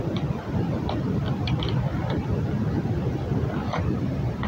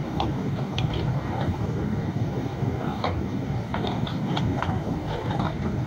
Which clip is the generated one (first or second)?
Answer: second